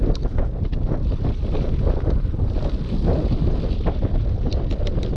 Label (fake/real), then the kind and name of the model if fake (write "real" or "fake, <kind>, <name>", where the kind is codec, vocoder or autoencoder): real